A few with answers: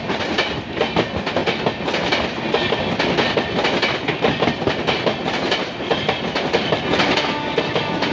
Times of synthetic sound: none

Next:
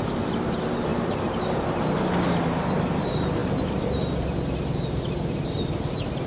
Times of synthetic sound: 0.9-1.5

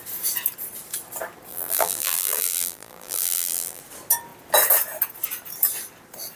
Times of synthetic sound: 1.5-3.8

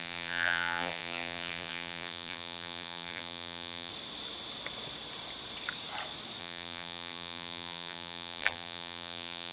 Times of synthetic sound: 0.0-3.9; 6.4-9.5

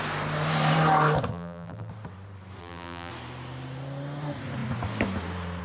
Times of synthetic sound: 1.3-1.9; 2.6-3.1

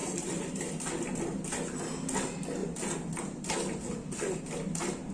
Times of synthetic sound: 0.0-0.7